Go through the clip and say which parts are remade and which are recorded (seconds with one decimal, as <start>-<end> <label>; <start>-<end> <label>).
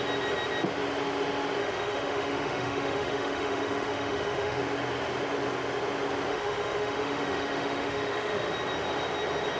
0.0-1.6 recorded; 1.6-4.6 remade; 4.6-6.3 recorded; 6.3-8.5 remade; 8.5-9.6 recorded